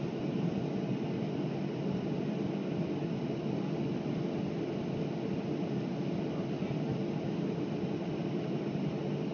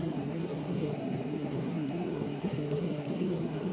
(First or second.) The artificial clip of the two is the second